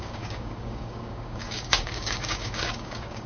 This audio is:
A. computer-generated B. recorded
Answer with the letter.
A